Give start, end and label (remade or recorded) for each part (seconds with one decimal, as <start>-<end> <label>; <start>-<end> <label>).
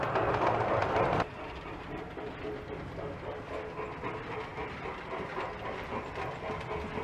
0.0-0.8 recorded; 0.8-2.3 remade; 2.3-7.0 recorded